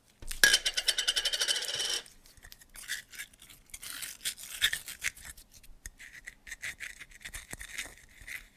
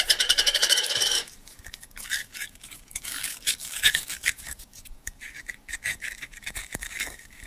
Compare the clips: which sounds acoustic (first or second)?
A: first